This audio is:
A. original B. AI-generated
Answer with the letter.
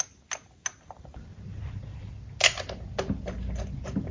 A